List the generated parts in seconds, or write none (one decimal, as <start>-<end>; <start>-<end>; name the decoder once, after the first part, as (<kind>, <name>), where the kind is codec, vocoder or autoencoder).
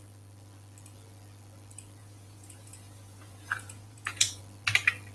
2.0-4.4 (vocoder, Vocos)